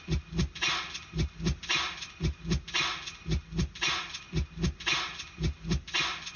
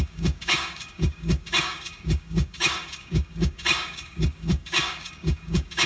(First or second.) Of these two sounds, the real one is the first